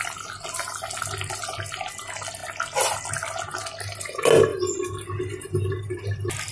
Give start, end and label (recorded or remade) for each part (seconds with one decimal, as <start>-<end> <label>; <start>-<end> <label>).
0.0-6.5 recorded